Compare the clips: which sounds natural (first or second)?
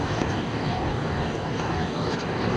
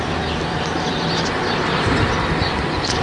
second